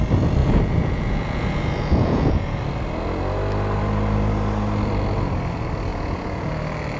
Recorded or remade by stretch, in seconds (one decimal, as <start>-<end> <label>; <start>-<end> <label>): 0.0-0.4 recorded; 0.4-2.6 remade; 2.6-5.9 recorded; 5.9-6.5 remade; 6.5-7.0 recorded